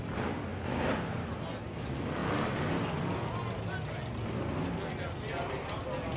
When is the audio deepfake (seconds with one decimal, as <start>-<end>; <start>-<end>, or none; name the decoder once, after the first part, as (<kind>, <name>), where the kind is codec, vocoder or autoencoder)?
none